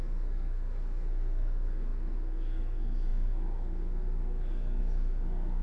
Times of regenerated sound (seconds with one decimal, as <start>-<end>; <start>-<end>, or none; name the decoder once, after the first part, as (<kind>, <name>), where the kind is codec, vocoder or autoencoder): 0.0-5.6 (codec, SNAC)